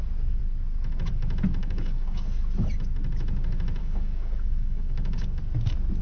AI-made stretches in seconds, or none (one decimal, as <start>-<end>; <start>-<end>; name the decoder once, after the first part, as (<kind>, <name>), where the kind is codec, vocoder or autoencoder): 1.6-2.3 (codec, DAC); 3.8-5.4